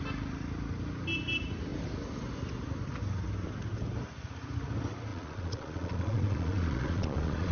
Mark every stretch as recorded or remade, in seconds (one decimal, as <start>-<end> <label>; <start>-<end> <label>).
0.0-5.1 recorded; 5.1-7.5 remade